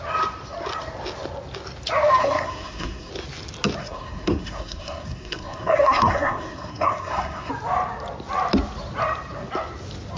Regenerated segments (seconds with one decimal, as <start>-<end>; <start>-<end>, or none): 2.2-3.1; 3.8-7.5